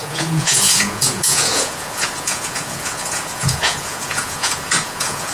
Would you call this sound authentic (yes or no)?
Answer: no